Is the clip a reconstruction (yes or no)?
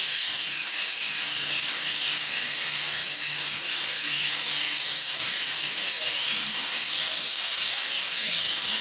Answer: yes